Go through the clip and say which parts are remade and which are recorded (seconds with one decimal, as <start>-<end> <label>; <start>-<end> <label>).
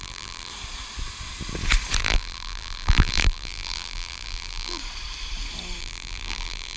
0.0-0.5 remade; 0.5-2.0 recorded; 2.0-4.8 remade; 4.8-5.8 recorded; 5.8-6.8 remade